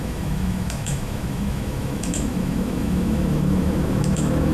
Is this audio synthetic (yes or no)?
yes